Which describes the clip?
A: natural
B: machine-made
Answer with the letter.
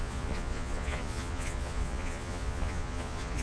B